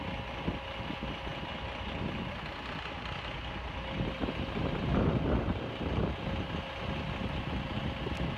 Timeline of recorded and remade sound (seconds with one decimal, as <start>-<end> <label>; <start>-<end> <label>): 0.0-8.4 recorded